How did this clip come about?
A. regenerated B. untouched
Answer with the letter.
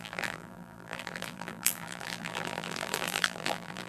A